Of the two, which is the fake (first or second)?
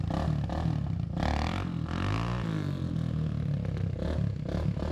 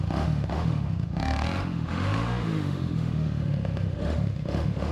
second